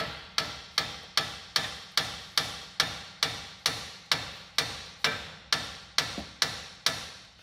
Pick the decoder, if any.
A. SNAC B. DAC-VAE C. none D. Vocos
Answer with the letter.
C